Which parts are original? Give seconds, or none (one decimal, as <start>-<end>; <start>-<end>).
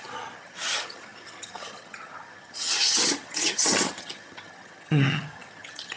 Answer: none